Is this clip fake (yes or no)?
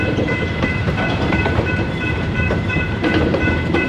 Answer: yes